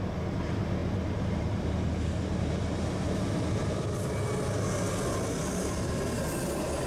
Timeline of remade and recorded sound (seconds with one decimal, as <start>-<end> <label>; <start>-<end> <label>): 0.0-6.9 recorded